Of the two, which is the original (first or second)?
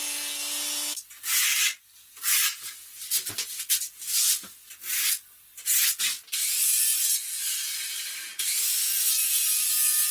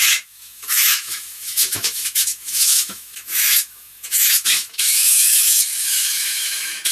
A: first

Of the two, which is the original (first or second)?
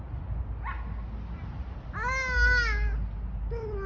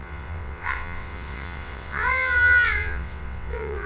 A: first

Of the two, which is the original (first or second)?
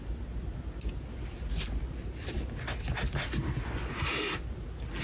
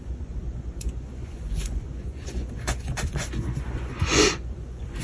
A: first